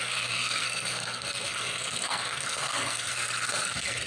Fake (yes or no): yes